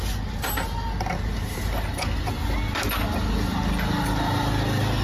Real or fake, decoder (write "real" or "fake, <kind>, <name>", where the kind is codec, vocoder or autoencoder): real